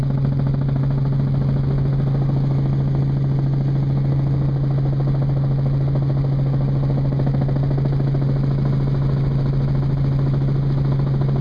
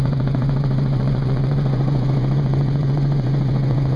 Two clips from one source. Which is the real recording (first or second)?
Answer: first